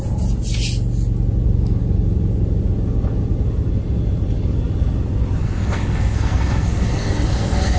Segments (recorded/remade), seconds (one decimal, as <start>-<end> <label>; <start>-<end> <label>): 0.0-5.4 recorded; 5.4-7.8 remade